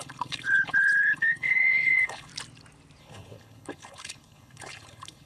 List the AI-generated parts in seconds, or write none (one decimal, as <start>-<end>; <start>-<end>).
0.0-2.3; 3.0-5.3